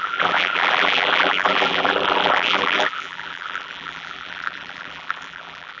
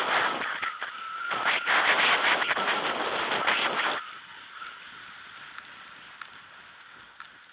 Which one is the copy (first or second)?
first